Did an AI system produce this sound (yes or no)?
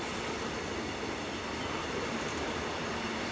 no